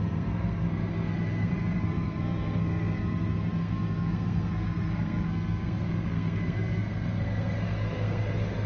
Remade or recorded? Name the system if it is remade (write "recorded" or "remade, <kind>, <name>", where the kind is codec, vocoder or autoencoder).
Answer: remade, codec, SNAC